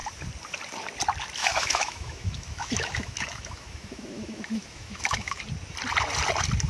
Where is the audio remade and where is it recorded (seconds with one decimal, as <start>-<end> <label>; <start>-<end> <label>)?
0.0-1.4 recorded; 1.4-5.4 remade; 5.4-6.7 recorded